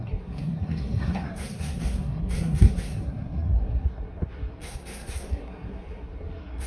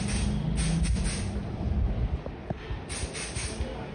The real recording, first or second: second